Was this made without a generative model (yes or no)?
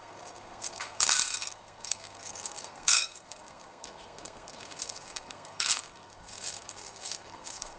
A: no